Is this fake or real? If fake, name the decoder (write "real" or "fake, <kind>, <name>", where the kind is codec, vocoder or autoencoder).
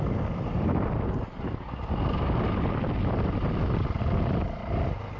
real